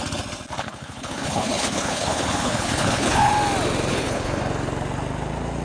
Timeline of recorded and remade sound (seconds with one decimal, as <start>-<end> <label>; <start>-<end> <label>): 0.0-0.6 recorded; 0.6-3.3 remade; 3.3-3.9 recorded; 3.9-4.4 remade; 4.4-5.6 recorded